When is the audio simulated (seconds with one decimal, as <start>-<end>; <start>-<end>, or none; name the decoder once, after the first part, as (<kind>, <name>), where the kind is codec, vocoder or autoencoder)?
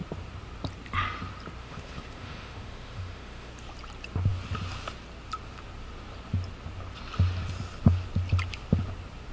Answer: 1.6-3.5 (autoencoder, DAC-VAE)